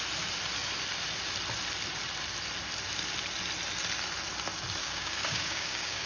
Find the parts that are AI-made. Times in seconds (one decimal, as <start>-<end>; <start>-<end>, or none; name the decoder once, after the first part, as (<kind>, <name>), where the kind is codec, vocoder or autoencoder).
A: 4.8-6.1 (codec, DAC)